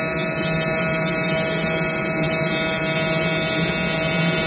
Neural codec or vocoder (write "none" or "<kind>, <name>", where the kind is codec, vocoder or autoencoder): none